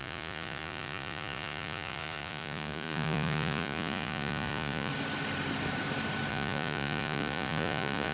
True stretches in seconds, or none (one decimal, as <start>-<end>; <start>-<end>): 4.9-6.3

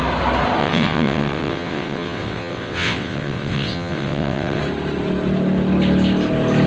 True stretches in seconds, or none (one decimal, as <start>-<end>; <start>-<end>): 0.0-0.6; 4.6-6.7

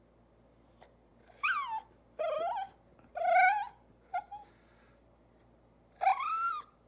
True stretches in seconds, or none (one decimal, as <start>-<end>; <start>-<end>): 0.0-3.6; 4.2-6.1